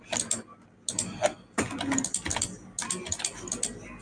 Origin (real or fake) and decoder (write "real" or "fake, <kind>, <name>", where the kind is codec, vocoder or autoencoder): real